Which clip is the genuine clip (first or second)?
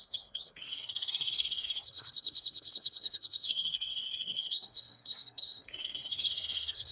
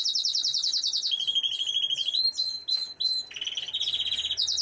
second